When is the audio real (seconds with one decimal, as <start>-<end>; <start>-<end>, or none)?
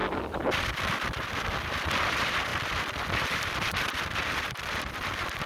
1.3-5.5